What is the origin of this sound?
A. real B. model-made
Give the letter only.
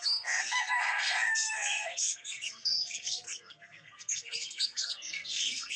B